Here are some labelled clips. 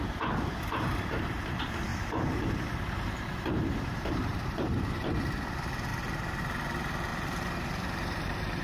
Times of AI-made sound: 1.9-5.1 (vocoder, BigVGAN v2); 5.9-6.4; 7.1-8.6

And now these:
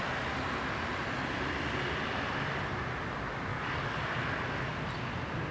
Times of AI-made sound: 3.5-4.0 (codec, DAC)